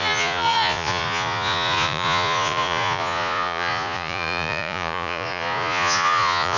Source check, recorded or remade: remade